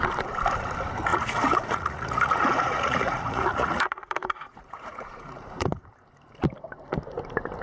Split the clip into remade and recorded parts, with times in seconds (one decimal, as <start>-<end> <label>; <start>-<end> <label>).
0.0-1.1 recorded; 1.1-5.7 remade; 5.7-7.6 recorded